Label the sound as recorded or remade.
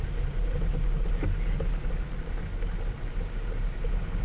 recorded